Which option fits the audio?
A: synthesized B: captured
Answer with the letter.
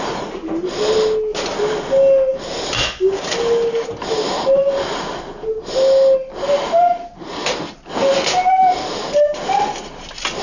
B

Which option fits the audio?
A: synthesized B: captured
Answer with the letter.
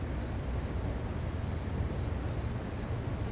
B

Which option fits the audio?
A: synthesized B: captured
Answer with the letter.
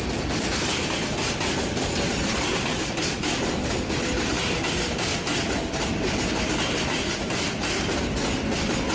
B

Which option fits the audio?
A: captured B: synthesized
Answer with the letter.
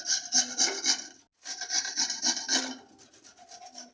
A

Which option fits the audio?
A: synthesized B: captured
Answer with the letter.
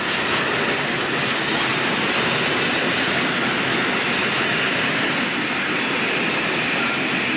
B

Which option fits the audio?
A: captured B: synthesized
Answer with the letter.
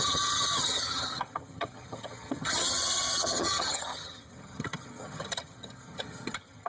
B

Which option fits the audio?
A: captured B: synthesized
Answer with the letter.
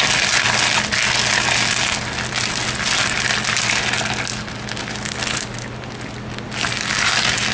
A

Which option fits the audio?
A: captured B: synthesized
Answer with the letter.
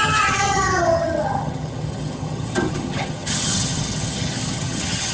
B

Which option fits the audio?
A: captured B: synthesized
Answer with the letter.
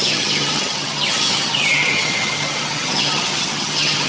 B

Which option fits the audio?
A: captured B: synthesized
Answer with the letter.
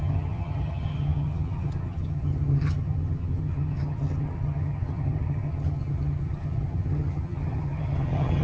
B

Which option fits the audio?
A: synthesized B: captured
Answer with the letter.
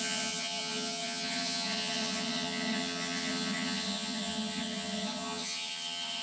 A